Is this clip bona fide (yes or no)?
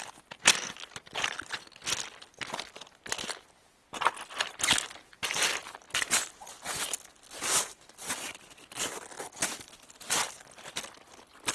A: yes